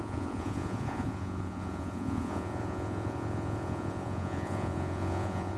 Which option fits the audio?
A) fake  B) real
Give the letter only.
A